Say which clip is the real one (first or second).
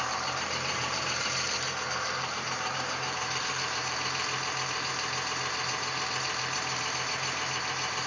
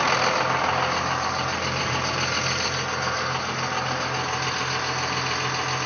second